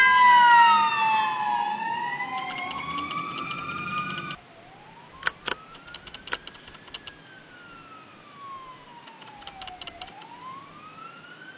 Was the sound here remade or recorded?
recorded